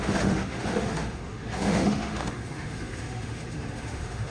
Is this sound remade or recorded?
remade